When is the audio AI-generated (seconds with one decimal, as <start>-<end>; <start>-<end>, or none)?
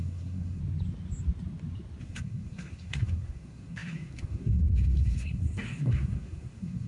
0.0-0.6; 2.0-6.9